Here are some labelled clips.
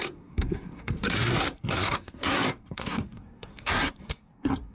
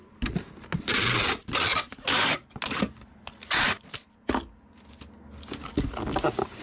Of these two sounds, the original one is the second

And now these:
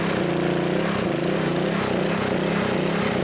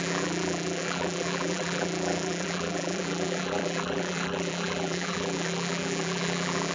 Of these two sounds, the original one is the first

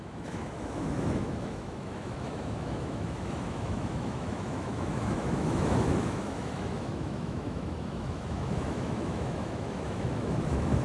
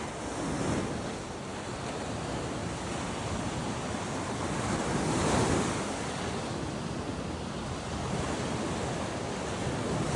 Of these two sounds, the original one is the second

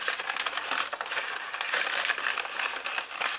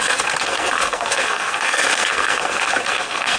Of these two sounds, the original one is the first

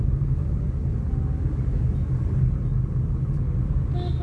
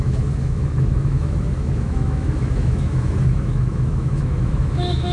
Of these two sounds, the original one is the first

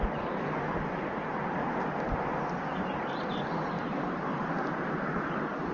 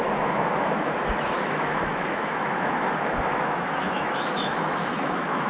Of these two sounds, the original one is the first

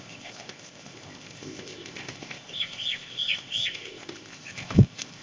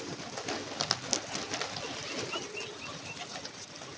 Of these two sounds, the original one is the second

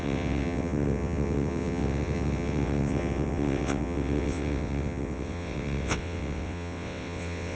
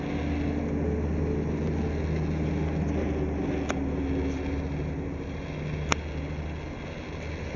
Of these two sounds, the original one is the second